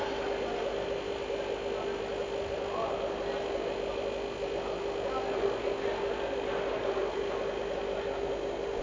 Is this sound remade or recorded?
recorded